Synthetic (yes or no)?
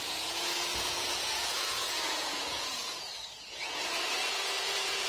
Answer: yes